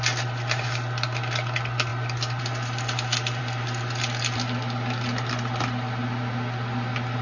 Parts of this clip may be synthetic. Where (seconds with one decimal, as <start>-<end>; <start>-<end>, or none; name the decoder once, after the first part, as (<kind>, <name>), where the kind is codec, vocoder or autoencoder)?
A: none